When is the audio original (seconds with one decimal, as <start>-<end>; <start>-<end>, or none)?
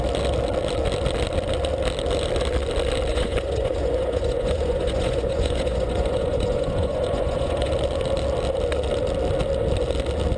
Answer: 0.0-3.1; 7.7-10.4